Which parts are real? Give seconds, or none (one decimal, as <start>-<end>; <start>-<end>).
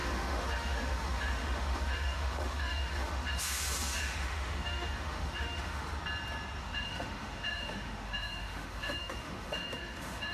5.9-6.6